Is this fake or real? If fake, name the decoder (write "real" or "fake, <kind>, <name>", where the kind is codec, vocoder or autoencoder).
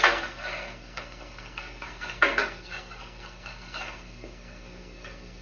fake, codec, SNAC